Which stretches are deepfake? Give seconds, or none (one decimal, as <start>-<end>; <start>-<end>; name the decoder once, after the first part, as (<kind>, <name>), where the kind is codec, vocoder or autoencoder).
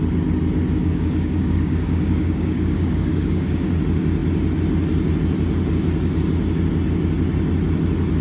0.8-3.7 (codec, DAC)